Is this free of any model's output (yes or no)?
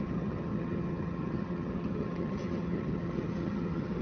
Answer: no